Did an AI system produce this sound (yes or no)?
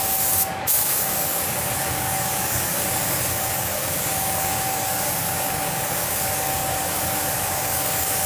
yes